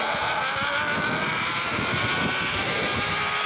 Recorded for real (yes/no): yes